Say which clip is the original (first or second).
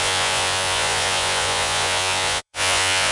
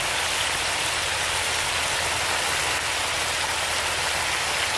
second